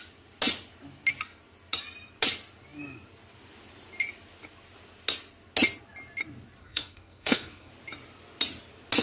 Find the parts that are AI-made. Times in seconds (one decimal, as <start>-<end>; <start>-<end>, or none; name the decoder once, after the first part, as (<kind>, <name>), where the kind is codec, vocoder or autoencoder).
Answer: 6.6-7.7 (codec, SNAC)